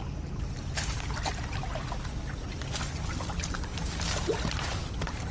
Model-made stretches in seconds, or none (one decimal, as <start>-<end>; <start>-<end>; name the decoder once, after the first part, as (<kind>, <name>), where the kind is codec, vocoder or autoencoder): none